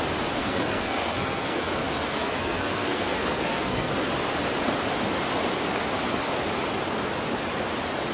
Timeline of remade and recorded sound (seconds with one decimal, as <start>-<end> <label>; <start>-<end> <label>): 0.0-0.4 recorded; 0.4-3.9 remade; 3.9-8.1 recorded